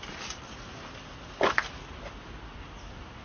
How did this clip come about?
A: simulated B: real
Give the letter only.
A